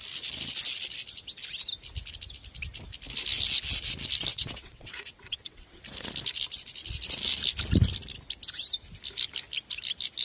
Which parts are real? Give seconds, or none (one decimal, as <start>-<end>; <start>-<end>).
0.0-4.3; 5.8-10.2